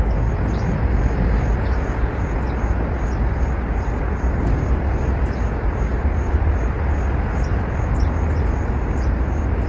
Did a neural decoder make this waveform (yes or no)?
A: no